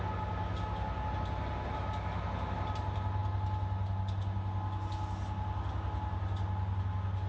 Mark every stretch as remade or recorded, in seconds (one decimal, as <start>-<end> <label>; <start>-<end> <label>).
0.0-7.3 recorded